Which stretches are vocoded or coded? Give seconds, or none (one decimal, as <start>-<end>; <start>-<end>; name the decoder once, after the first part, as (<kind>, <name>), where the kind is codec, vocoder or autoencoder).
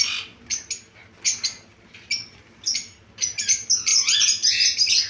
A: none